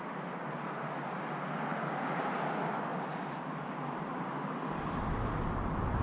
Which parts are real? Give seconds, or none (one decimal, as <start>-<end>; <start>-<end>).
0.0-1.7; 2.3-2.9; 5.5-6.0